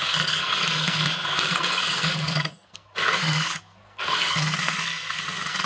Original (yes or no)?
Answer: no